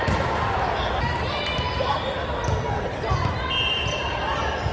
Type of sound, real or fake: real